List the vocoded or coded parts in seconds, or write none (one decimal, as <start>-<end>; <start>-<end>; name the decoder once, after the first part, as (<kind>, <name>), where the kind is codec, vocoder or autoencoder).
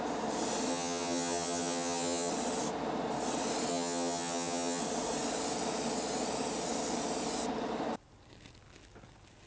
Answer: 0.7-2.3 (vocoder, HiFi-GAN); 3.7-4.8